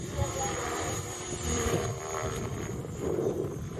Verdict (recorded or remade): remade